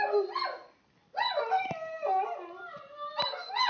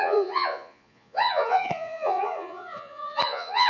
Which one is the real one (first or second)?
first